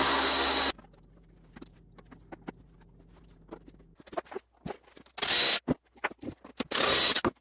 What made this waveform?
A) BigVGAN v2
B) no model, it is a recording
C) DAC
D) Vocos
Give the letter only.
B